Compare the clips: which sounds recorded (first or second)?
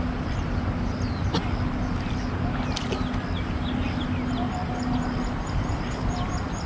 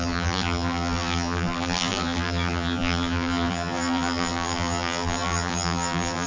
first